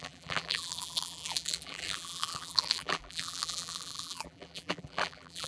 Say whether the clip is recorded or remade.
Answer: remade